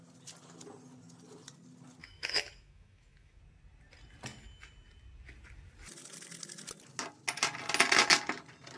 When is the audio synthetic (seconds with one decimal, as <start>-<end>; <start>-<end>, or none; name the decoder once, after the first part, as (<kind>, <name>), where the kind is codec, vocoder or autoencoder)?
2.0-3.4 (autoencoder, DAC-VAE)